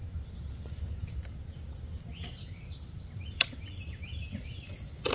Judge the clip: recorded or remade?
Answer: recorded